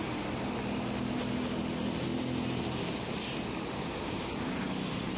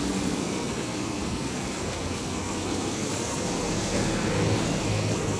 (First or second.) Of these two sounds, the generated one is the second